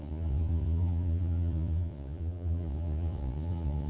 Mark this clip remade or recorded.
remade